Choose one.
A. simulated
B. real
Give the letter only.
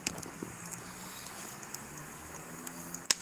A